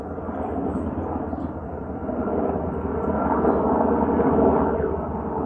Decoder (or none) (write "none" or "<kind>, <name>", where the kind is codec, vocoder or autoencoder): none